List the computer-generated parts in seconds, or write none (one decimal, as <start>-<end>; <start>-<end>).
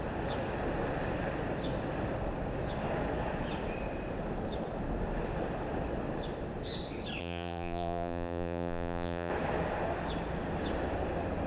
7.2-9.3